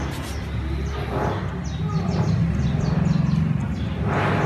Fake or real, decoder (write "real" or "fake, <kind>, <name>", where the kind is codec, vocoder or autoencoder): real